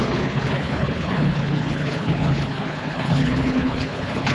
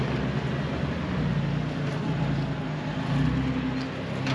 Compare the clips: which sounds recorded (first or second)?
second